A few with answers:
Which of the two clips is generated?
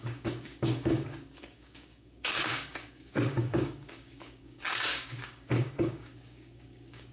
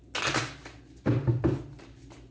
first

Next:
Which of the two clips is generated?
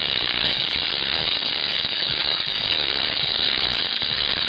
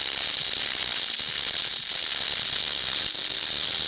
first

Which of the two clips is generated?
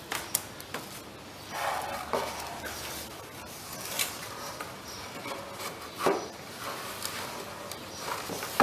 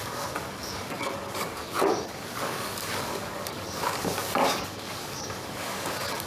second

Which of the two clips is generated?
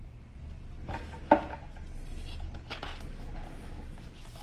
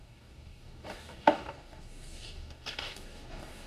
second